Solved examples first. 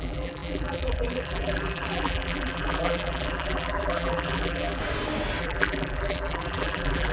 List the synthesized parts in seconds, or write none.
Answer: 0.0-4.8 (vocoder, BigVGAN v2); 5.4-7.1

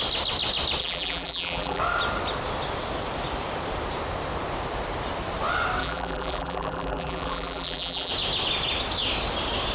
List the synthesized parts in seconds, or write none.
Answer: 0.8-1.8 (vocoder, BigVGAN v2); 5.8-8.1